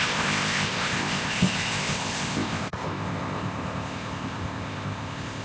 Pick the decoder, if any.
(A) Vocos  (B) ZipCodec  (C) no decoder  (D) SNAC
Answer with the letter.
B